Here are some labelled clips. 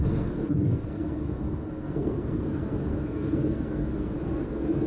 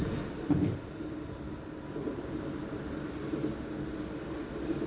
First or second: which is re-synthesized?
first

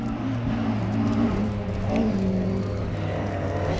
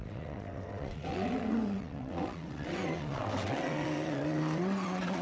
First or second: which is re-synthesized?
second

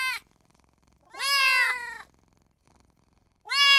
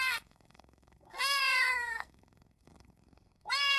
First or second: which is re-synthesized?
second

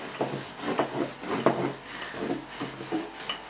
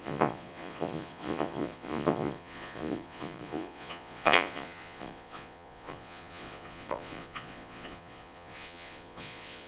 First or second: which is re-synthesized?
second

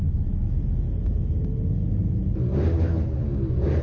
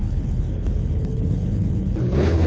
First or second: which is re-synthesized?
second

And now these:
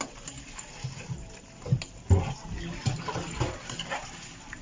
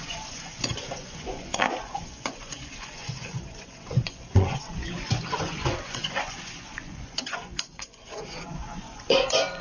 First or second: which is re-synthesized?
second